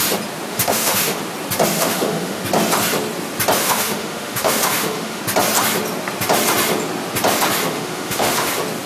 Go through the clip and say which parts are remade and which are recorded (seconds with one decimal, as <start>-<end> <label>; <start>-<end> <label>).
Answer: 0.0-0.5 recorded; 0.5-1.2 remade; 1.2-1.7 recorded; 1.7-2.4 remade; 2.4-3.6 recorded; 3.6-5.2 remade; 5.2-7.7 recorded; 7.7-8.5 remade; 8.5-8.9 recorded